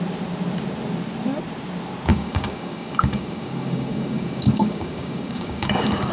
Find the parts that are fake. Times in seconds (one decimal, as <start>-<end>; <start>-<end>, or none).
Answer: 2.1-6.1